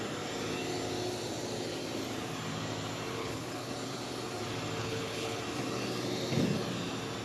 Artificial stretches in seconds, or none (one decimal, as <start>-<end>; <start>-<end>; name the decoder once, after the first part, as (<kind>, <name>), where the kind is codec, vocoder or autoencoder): 3.2-3.7 (codec, HILCodec); 4.8-5.4